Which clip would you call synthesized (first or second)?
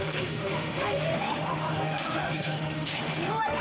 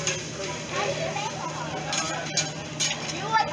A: first